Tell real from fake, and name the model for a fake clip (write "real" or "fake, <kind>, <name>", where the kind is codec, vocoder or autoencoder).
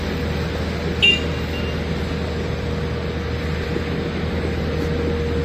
real